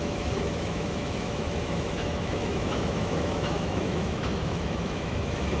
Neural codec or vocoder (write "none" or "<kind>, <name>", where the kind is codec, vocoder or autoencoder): autoencoder, DAC-VAE